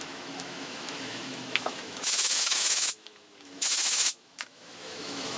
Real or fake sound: fake